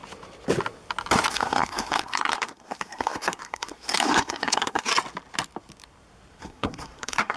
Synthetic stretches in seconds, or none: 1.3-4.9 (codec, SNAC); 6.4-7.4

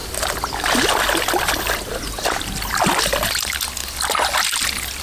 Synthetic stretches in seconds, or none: none

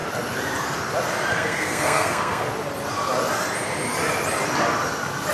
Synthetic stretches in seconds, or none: 1.3-2.5 (codec, SNAC)

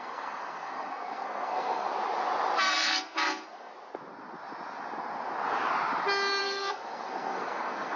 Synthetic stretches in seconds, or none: 0.0-1.9 (codec, SNAC); 2.7-3.7; 6.4-8.0

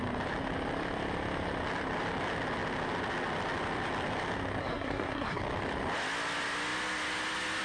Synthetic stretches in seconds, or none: 4.6-5.4 (codec, SNAC)

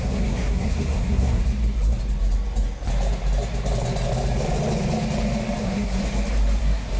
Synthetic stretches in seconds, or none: 0.0-1.4 (codec, SNAC); 5.6-6.0; 6.6-7.0